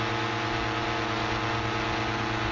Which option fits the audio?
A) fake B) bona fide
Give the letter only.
B